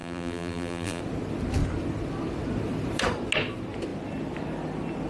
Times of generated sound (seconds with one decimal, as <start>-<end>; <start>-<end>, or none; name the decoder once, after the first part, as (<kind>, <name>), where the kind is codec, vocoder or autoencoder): 0.0-1.0 (vocoder, BigVGAN v2)